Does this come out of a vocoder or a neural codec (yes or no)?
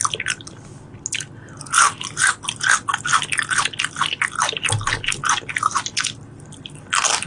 no